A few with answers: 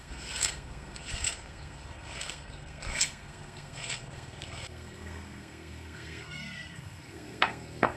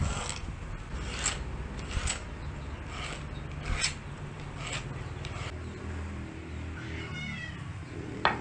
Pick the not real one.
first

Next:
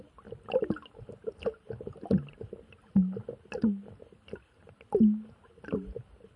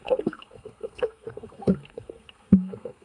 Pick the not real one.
second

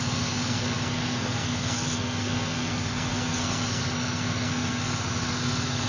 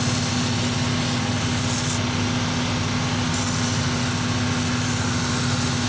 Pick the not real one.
first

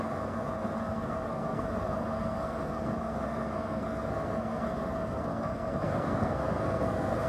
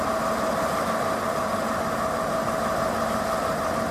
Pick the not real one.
first